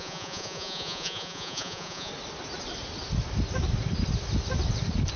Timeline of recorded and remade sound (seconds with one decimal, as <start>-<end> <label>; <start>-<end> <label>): 0.0-2.1 remade; 2.1-5.2 recorded